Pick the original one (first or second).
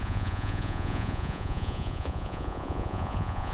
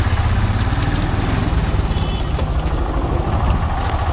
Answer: second